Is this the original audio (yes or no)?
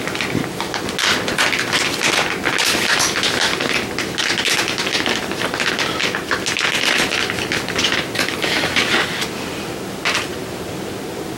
yes